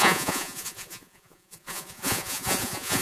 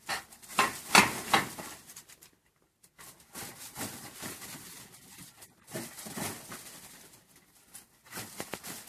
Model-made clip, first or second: first